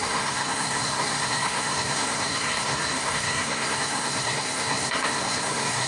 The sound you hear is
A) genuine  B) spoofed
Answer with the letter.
B